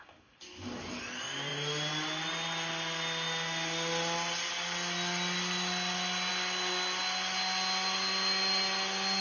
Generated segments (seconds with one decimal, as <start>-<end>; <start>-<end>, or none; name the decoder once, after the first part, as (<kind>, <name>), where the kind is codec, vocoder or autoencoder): none